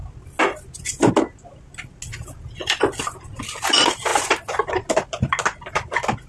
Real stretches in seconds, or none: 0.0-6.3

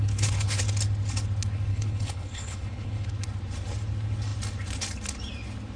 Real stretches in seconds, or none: 0.6-1.7; 3.1-5.8

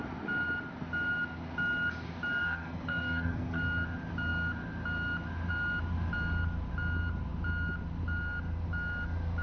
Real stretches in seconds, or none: 0.0-2.4; 3.6-9.4

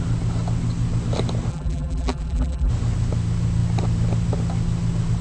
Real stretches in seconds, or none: 0.0-1.5; 2.7-5.2